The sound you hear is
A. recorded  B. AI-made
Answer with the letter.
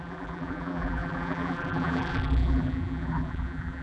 B